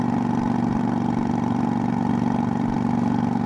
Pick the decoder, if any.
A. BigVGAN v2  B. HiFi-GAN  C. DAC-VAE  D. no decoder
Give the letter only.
A